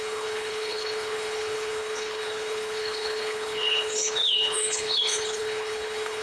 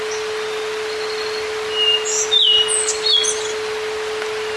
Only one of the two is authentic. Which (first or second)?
second